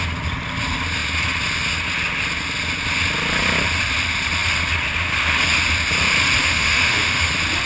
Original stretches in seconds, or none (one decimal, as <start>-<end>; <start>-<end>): 0.0-6.4; 7.3-7.7

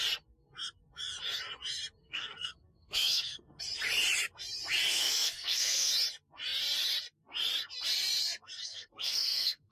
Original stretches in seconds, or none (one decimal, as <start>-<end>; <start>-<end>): 0.0-2.0; 3.6-4.9; 5.9-8.6

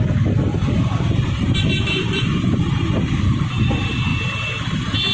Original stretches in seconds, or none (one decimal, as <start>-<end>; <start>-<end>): 0.0-0.5; 3.6-5.1

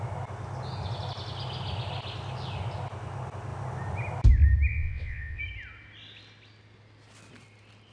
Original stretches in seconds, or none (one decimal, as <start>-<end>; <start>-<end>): 0.0-4.7; 5.4-7.9

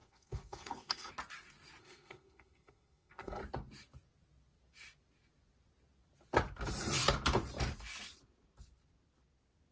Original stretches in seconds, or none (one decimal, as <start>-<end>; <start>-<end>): 1.1-1.8; 3.4-9.7